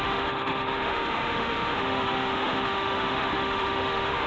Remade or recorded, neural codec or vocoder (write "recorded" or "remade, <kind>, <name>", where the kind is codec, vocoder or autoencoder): remade, autoencoder, DAC-VAE